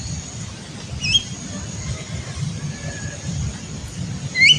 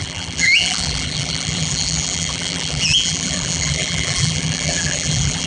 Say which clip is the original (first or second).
first